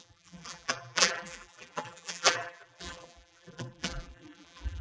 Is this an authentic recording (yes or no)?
no